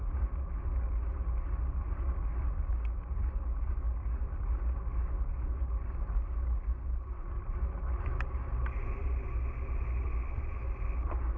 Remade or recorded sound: recorded